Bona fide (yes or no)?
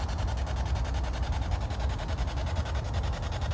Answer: yes